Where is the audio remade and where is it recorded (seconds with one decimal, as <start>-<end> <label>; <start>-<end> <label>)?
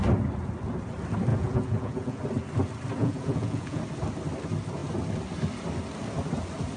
0.0-1.3 recorded; 1.3-2.2 remade; 2.2-3.0 recorded; 3.0-3.8 remade; 3.8-6.8 recorded